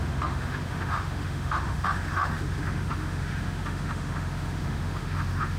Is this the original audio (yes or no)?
no